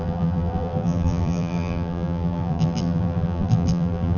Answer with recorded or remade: remade